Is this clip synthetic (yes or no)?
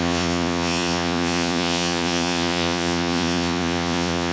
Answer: yes